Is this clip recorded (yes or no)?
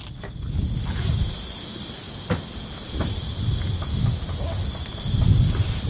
yes